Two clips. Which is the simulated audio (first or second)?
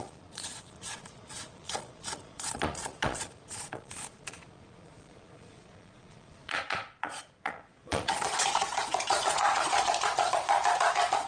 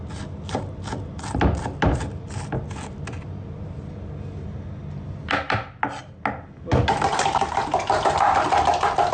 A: first